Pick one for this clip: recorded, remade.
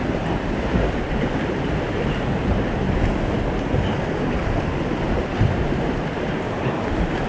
recorded